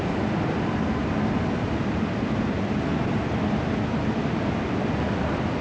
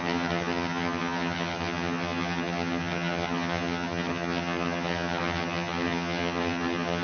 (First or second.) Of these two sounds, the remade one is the second